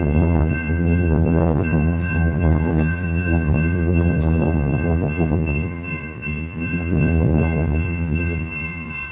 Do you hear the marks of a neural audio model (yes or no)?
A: yes